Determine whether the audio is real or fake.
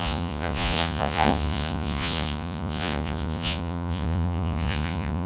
fake